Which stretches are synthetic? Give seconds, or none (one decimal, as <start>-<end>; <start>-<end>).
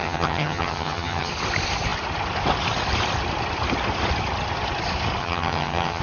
0.0-1.3; 5.2-6.0